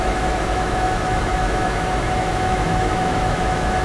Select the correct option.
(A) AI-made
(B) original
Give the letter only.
A